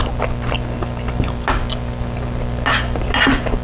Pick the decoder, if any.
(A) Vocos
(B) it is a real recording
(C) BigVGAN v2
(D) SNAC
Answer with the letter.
B